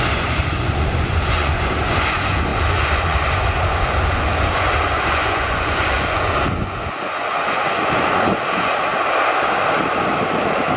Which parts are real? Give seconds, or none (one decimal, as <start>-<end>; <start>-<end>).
8.9-10.8